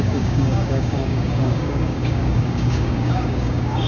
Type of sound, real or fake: fake